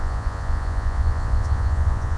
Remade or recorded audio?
remade